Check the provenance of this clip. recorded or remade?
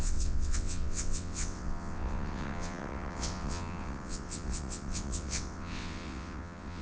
remade